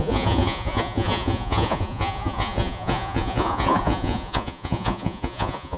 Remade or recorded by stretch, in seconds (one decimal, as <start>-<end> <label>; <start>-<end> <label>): 0.0-5.8 remade